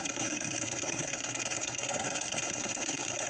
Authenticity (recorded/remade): remade